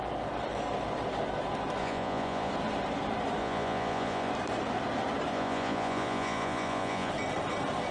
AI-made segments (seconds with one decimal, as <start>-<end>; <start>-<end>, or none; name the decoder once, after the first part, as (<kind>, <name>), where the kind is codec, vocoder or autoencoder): 1.8-2.5 (vocoder, Vocos); 3.4-4.3; 5.3-7.1